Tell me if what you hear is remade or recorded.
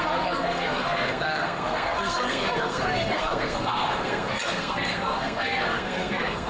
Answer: remade